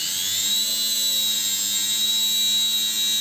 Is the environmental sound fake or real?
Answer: real